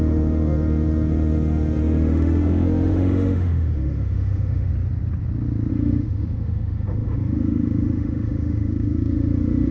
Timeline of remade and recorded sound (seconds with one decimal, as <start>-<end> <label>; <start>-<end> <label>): 0.0-4.7 remade; 4.7-5.7 recorded; 5.7-9.7 remade